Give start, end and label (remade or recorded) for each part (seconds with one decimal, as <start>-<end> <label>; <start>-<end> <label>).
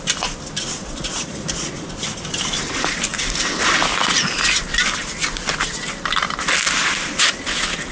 0.0-0.8 recorded; 0.8-1.9 remade; 1.9-7.9 recorded